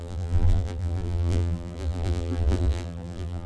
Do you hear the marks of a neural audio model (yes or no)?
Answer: yes